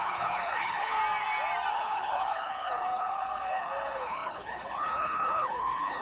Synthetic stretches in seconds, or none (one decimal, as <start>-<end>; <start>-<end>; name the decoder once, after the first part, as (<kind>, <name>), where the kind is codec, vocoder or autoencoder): 0.0-1.0 (codec, HILCodec); 1.7-6.0